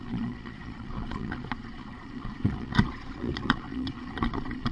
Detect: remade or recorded remade